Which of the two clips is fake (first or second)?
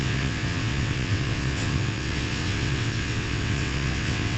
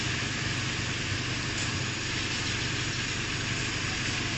first